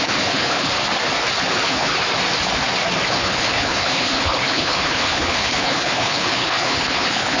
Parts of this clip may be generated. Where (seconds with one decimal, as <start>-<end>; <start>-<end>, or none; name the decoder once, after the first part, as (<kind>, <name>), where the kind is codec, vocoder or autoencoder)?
0.0-0.7 (codec, HILCodec); 1.5-1.9; 3.1-7.4